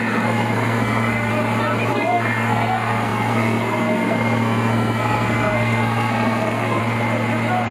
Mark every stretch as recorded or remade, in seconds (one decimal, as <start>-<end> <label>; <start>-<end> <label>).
0.0-1.3 remade; 1.3-1.9 recorded; 1.9-6.8 remade; 6.8-7.7 recorded